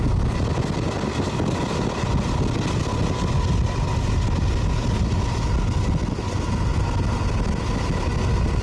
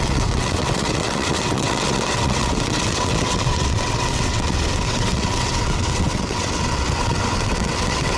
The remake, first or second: second